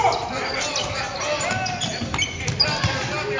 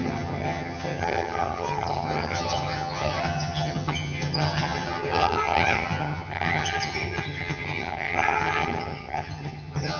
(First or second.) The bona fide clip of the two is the first